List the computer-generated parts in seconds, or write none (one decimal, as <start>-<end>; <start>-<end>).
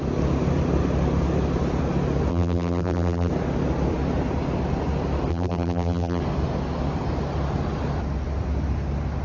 2.3-3.3; 5.3-6.2